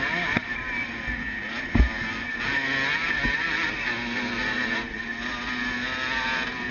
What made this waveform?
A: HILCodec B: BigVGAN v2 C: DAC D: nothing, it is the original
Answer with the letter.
D